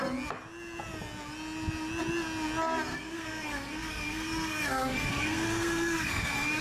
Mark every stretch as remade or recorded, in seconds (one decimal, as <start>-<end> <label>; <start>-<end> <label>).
0.0-2.9 recorded; 2.9-6.6 remade

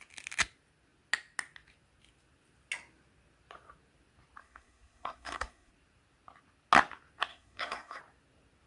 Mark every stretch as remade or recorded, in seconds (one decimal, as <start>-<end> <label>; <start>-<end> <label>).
0.0-4.4 recorded; 4.4-5.7 remade; 5.7-7.3 recorded; 7.3-8.0 remade; 8.0-8.7 recorded

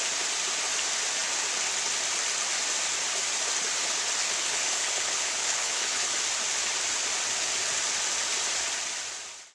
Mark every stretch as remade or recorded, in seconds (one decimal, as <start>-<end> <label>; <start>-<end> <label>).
0.0-4.2 recorded; 4.2-6.1 remade; 6.1-9.5 recorded

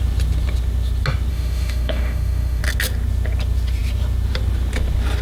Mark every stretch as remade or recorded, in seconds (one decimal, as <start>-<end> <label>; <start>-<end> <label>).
0.0-1.3 recorded; 1.3-2.6 remade; 2.6-5.2 recorded